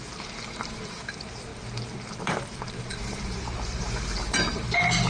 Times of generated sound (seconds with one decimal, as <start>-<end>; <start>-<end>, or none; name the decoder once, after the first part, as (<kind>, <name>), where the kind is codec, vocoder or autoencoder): 0.0-5.1 (vocoder, BigVGAN v2)